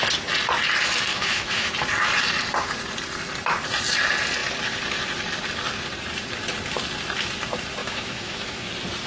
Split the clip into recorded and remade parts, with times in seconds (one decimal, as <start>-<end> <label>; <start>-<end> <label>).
0.0-1.1 recorded; 1.1-1.7 remade; 1.7-7.8 recorded; 7.8-8.7 remade; 8.7-9.1 recorded

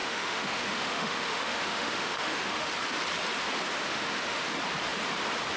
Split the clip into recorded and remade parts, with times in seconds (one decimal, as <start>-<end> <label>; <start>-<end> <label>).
0.0-2.7 remade; 2.7-3.9 recorded; 3.9-4.5 remade; 4.5-5.6 recorded